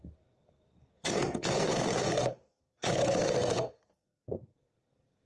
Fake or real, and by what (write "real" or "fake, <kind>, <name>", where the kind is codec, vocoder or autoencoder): fake, codec, SNAC